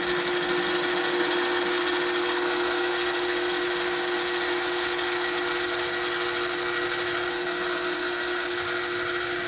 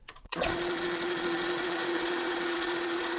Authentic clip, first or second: first